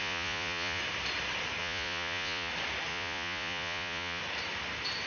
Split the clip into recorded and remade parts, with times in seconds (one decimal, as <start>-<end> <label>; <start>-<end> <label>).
0.0-0.8 remade; 0.8-1.6 recorded; 1.6-2.5 remade; 2.5-2.9 recorded; 2.9-4.2 remade; 4.2-5.1 recorded